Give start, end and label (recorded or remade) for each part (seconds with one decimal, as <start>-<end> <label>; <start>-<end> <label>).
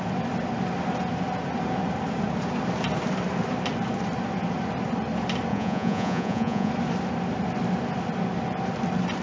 0.0-5.5 recorded; 5.5-6.7 remade; 6.7-9.2 recorded